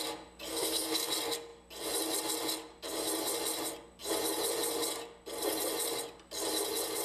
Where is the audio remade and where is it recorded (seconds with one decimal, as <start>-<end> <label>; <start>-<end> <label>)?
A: 0.0-0.5 recorded; 0.5-1.1 remade; 1.1-7.0 recorded